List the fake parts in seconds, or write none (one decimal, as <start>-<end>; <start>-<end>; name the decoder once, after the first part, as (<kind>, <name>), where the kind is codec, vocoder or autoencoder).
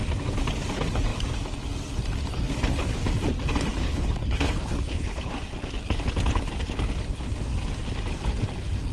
3.8-5.3 (codec, HILCodec)